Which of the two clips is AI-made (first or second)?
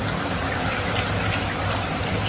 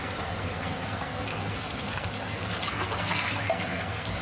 second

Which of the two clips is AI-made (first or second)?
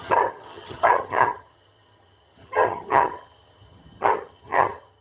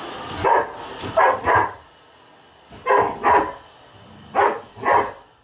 first